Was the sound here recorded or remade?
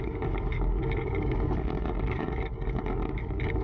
remade